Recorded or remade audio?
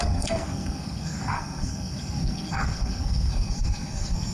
remade